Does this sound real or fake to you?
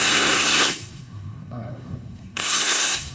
fake